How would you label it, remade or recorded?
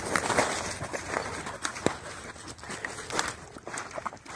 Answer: recorded